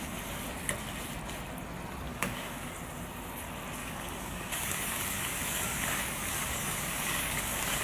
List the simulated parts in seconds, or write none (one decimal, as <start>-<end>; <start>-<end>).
2.1-2.7; 3.8-7.8